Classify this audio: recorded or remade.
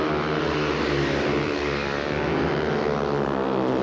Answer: recorded